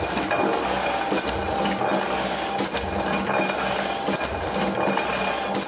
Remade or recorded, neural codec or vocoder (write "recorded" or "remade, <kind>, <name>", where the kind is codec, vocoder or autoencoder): recorded